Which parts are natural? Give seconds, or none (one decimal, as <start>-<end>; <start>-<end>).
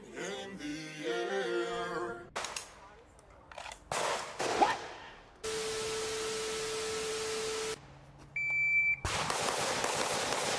0.0-10.6